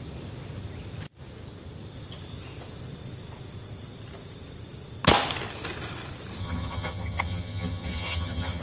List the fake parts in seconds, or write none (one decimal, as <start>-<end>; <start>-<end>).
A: 6.4-8.6